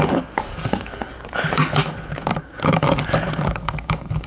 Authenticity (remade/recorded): remade